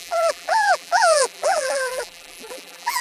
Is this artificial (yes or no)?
yes